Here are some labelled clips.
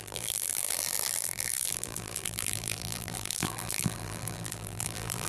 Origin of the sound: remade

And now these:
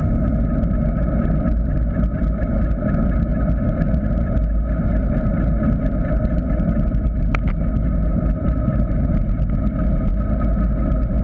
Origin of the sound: recorded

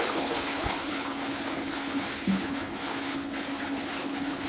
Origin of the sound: remade